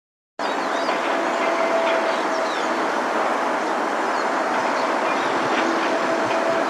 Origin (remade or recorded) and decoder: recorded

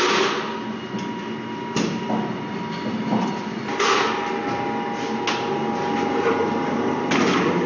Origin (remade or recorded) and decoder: recorded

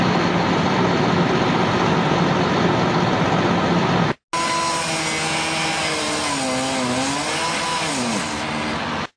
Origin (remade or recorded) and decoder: recorded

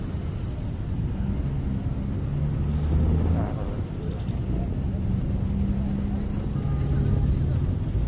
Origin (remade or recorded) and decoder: recorded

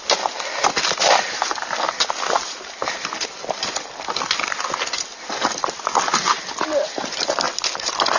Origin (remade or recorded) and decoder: recorded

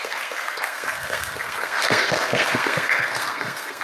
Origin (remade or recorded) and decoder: remade, codec, SNAC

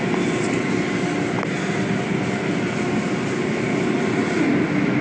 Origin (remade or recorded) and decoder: recorded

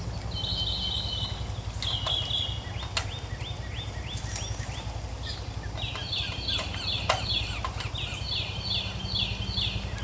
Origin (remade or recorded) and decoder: recorded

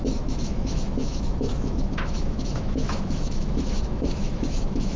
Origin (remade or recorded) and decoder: remade, autoencoder, DAC-VAE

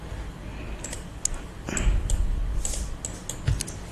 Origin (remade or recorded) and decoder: recorded